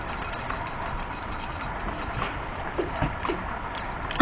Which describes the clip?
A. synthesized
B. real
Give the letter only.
B